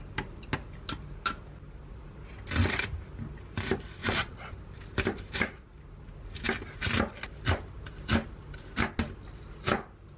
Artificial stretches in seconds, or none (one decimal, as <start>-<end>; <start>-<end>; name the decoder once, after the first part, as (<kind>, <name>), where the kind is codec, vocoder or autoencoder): 4.0-4.5 (vocoder, Vocos)